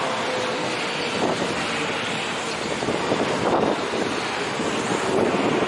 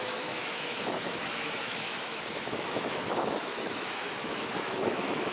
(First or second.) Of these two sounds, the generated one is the second